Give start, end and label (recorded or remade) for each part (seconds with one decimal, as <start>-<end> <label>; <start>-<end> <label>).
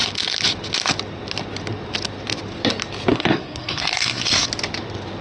0.0-3.1 recorded; 3.1-4.5 remade; 4.5-5.2 recorded